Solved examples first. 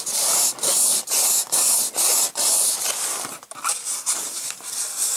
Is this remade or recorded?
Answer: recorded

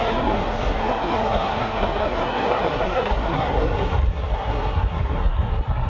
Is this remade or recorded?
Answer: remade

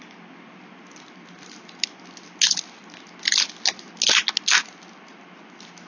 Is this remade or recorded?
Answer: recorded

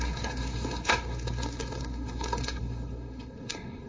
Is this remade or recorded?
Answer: remade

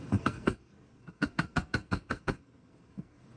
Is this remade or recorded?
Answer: remade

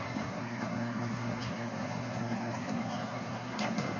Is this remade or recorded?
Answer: remade